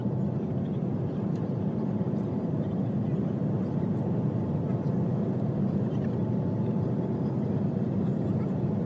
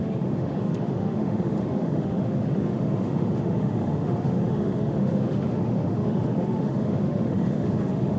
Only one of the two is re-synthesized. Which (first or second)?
second